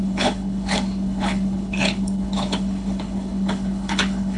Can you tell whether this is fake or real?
fake